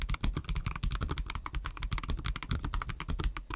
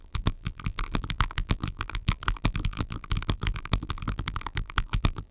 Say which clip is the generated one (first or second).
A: second